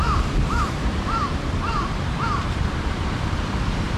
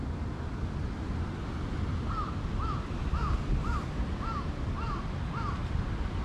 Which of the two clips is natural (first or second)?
second